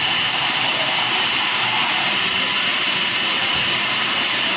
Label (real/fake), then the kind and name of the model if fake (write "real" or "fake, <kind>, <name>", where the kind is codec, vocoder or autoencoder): fake, vocoder, BigVGAN v2